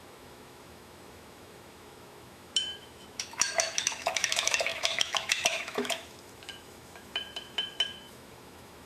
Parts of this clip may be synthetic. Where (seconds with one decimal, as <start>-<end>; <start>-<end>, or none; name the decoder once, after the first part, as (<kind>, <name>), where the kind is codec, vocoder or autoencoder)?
0.0-8.9 (autoencoder, DAC-VAE)